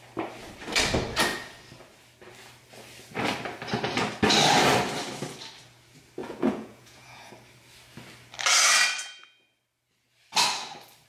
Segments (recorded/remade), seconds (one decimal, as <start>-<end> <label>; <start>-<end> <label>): 0.0-6.2 recorded; 6.2-7.3 remade; 7.3-11.1 recorded